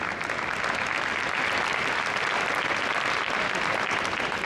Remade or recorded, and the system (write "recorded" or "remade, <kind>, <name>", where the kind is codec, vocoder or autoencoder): recorded